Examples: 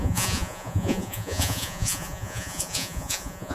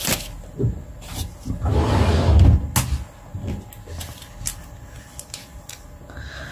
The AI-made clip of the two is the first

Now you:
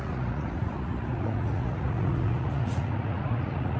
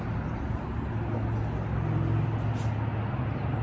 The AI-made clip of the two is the first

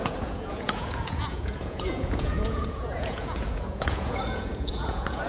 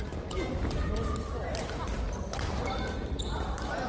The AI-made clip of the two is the first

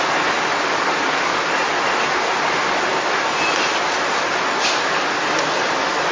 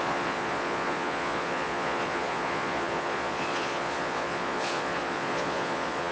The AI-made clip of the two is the second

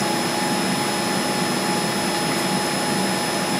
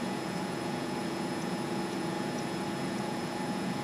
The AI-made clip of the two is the second